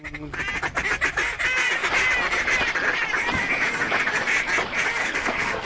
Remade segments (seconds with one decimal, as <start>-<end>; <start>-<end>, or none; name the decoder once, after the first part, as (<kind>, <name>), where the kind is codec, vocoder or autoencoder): 5.0-5.7 (codec, SNAC)